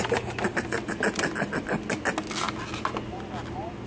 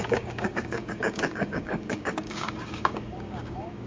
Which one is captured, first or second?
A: first